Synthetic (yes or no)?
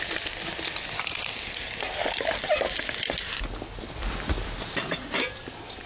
no